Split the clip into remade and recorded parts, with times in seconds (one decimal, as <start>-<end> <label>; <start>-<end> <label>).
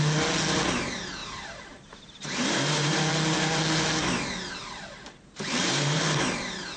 0.0-1.2 recorded; 1.2-3.1 remade; 3.1-5.6 recorded; 5.6-6.3 remade; 6.3-6.8 recorded